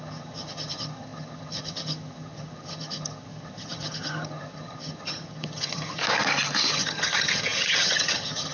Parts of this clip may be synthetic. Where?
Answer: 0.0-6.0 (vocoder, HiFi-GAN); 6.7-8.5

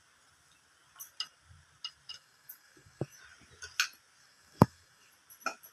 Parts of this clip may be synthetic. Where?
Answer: 2.1-3.2 (codec, DAC); 4.2-5.1

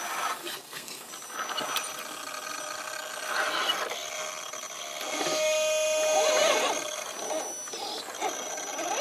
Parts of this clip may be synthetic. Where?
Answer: 0.4-1.1 (codec, SNAC)